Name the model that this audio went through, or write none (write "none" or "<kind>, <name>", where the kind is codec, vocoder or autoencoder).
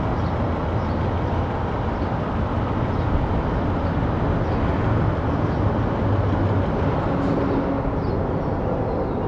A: none